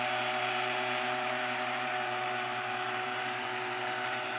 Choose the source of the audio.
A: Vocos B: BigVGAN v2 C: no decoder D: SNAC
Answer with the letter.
B